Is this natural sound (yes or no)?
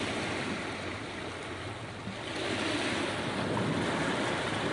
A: yes